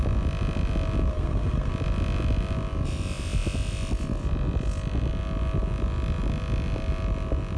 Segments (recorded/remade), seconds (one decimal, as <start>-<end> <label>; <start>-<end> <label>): 0.0-1.1 recorded; 1.1-1.7 remade; 1.7-7.6 recorded